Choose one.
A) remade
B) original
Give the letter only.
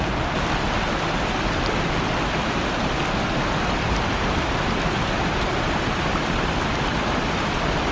B